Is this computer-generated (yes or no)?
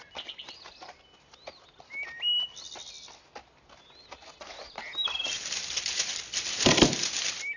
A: no